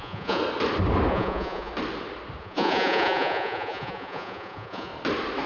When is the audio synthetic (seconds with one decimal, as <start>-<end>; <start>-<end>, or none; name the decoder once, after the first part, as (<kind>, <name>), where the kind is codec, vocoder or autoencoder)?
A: 0.0-0.4 (vocoder, Vocos); 1.1-1.7; 2.4-4.9